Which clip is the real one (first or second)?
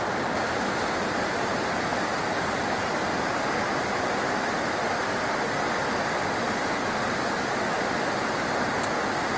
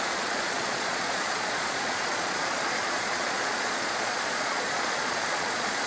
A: first